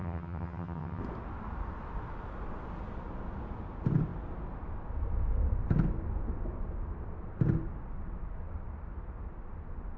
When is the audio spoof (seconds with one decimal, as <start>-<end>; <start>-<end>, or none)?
0.0-1.0